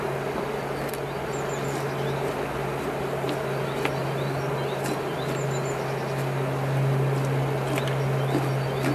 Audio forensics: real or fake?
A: real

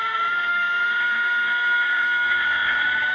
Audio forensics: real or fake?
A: fake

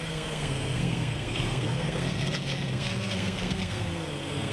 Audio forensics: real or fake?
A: fake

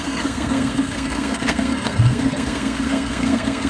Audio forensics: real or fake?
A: fake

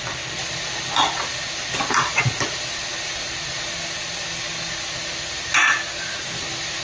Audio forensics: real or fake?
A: real